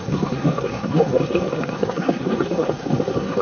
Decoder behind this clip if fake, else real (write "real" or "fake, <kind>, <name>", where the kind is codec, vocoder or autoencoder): fake, codec, SNAC